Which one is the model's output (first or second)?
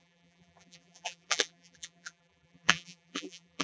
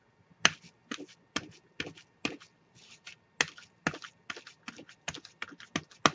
first